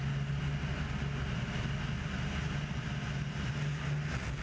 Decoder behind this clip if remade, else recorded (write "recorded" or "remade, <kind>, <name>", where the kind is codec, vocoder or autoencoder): recorded